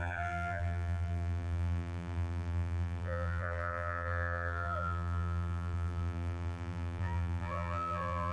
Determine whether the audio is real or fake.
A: fake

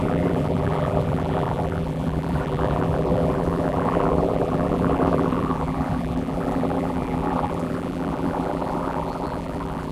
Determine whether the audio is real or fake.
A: fake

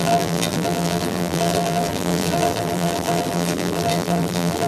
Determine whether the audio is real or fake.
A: fake